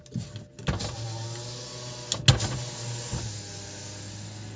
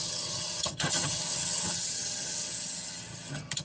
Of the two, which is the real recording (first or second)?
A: first